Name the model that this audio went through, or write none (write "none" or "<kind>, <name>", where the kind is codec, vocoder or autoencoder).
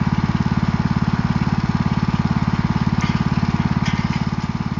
none